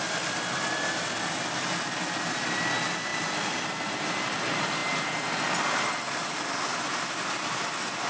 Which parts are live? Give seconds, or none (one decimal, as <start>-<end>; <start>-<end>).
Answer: 0.0-8.1